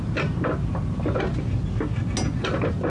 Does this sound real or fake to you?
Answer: real